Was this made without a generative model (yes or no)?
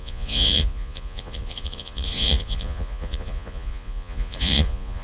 no